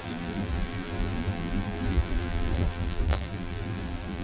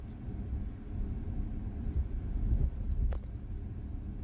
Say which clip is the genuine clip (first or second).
second